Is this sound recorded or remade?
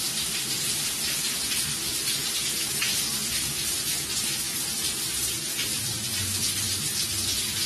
recorded